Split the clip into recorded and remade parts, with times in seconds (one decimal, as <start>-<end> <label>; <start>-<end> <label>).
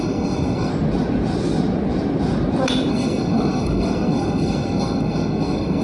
0.0-0.7 remade; 0.7-2.9 recorded; 2.9-5.8 remade